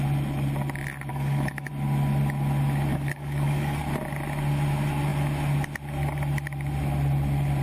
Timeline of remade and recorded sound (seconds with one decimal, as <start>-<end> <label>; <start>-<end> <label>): 0.0-1.1 recorded; 1.1-1.7 remade; 1.7-2.9 recorded; 2.9-3.8 remade; 3.8-7.6 recorded